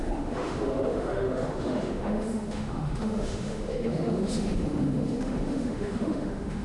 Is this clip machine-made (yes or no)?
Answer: yes